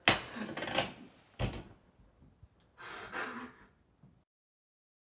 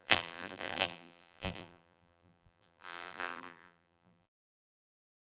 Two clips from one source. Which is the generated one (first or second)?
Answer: second